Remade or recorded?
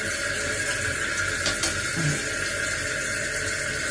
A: recorded